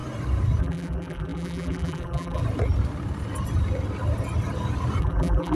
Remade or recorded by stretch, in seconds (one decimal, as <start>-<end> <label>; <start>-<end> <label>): 0.0-0.6 recorded; 0.6-2.4 remade; 2.4-5.0 recorded; 5.0-5.5 remade